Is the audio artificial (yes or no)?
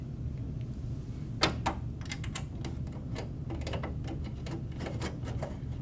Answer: no